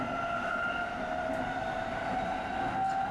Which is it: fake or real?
real